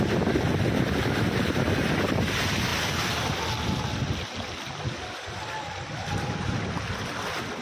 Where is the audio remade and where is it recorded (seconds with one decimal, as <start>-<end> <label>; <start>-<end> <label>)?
0.0-7.6 recorded